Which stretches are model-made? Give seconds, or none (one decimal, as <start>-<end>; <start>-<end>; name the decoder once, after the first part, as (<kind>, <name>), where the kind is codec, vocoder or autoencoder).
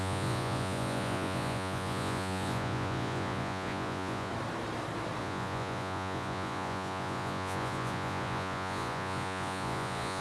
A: 0.0-4.3 (vocoder, Vocos); 5.2-10.2